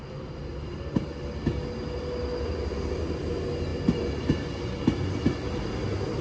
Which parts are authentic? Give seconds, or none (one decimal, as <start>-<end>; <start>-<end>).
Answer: 0.0-6.2